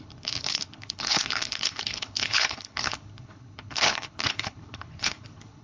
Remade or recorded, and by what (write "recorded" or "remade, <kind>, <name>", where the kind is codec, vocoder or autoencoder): remade, codec, HILCodec